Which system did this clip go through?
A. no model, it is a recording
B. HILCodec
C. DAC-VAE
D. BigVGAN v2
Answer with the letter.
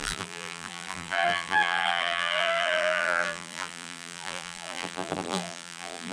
D